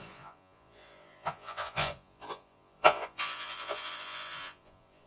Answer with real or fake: fake